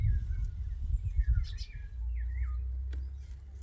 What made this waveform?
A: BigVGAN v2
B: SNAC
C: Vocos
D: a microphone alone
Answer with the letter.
D